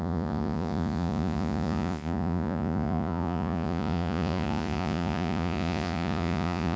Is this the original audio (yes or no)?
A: no